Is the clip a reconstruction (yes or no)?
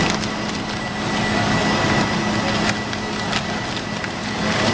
no